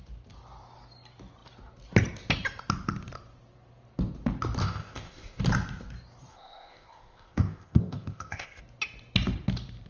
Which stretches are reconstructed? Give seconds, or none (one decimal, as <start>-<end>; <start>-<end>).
4.6-5.4; 6.3-8.6